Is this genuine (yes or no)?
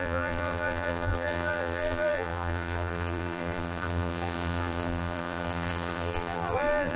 no